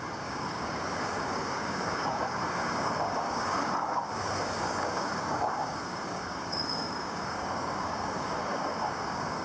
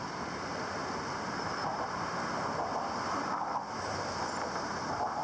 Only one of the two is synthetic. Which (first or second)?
first